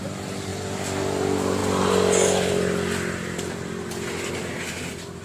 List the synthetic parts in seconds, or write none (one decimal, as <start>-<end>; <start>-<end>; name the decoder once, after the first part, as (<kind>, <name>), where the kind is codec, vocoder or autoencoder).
0.0-1.6 (vocoder, BigVGAN v2); 4.6-5.2